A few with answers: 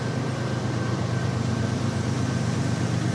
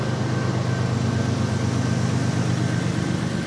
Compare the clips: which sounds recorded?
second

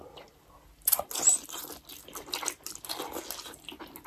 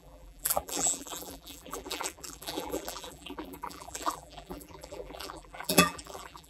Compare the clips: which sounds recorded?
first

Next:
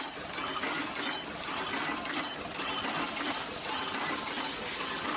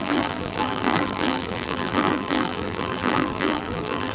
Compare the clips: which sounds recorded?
first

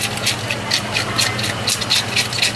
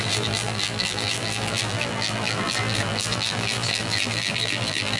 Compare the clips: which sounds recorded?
first